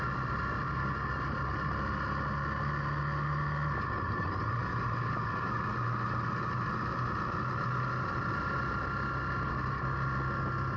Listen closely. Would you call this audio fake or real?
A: real